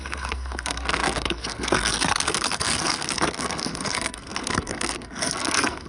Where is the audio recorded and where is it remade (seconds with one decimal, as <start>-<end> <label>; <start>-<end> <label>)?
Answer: 0.0-5.9 remade